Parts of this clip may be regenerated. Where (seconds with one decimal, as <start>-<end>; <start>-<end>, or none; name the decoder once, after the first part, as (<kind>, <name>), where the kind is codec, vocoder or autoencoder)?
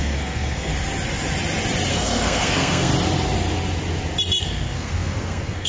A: 0.0-0.7 (codec, SNAC); 1.9-2.9; 4.4-5.7